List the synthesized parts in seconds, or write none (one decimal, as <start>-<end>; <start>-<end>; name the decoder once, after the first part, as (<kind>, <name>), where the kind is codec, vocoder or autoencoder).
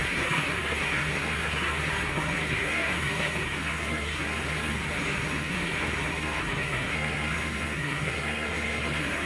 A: 0.0-9.3 (codec, SNAC)